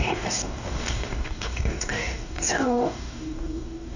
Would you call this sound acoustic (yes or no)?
no